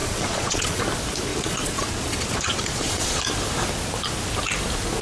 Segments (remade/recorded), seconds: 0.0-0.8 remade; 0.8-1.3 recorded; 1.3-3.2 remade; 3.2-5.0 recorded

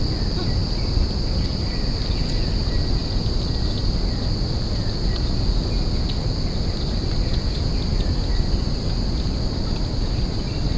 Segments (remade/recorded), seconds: 0.0-10.8 recorded

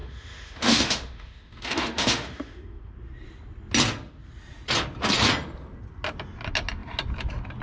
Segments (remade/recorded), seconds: 0.0-2.9 remade; 2.9-7.6 recorded

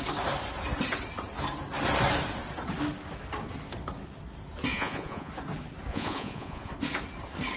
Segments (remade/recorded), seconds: 0.0-4.7 recorded; 4.7-5.3 remade; 5.3-5.9 recorded; 5.9-6.7 remade; 6.7-7.6 recorded